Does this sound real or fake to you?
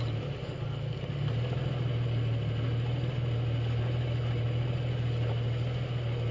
real